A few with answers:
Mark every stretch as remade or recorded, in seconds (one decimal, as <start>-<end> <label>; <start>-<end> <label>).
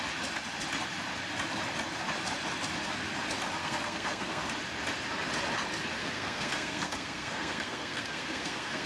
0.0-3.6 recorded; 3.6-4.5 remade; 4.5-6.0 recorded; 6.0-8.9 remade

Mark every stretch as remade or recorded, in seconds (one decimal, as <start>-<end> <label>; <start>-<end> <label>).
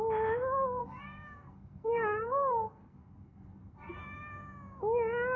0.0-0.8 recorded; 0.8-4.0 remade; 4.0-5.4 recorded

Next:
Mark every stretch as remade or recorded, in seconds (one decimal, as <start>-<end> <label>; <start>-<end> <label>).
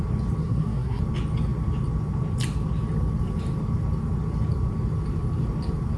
0.0-0.4 recorded; 0.4-1.0 remade; 1.0-6.0 recorded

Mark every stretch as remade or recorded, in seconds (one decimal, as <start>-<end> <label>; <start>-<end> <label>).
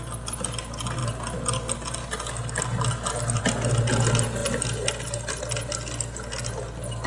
0.0-7.1 recorded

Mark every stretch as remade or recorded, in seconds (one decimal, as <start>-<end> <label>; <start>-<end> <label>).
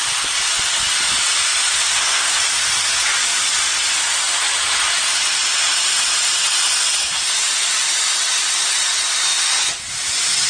0.0-1.7 recorded; 1.7-2.4 remade; 2.4-10.5 recorded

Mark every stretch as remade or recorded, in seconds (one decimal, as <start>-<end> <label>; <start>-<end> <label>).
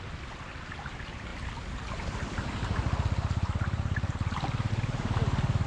0.0-5.7 recorded